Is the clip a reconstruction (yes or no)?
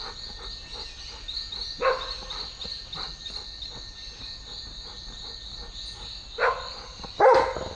no